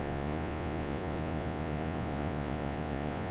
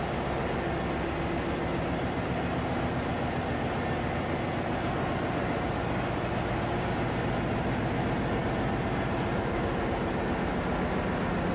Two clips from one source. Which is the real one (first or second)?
second